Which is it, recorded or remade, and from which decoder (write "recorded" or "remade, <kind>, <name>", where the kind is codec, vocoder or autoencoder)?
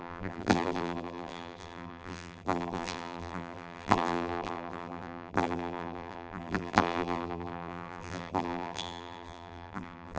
remade, vocoder, BigVGAN v2